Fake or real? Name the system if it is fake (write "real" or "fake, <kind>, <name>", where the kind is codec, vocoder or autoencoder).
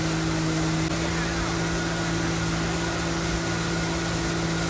real